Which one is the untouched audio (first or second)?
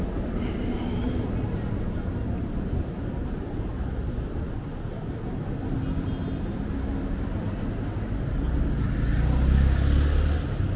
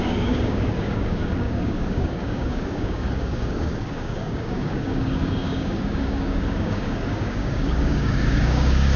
first